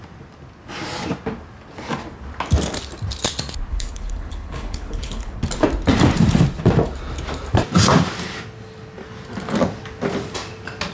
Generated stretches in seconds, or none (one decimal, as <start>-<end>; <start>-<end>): 3.7-5.3